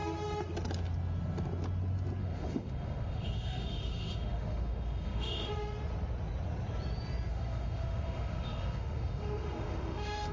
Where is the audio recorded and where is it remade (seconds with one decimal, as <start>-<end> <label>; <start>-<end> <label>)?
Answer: 0.0-2.2 recorded; 2.2-5.5 remade; 5.5-7.3 recorded; 7.3-10.3 remade